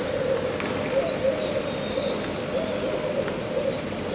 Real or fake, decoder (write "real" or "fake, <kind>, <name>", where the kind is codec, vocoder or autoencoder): real